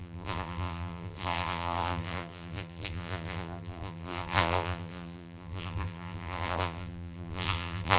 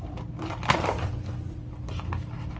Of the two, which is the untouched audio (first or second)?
second